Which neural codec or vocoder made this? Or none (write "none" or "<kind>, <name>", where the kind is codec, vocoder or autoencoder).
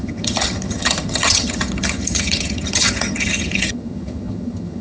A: vocoder, HiFi-GAN